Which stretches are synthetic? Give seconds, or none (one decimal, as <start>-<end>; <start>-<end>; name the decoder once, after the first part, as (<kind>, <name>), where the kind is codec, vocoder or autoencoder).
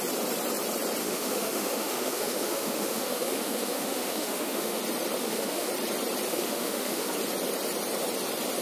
1.0-4.8 (autoencoder, DAC-VAE); 5.2-5.7; 6.3-7.1